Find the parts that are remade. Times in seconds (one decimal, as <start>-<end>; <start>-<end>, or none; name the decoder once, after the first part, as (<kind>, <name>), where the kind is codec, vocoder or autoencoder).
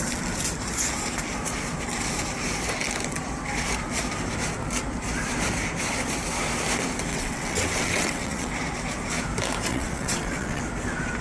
7.1-8.5 (vocoder, WaveNeXt); 9.7-10.6